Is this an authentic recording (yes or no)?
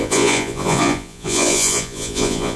no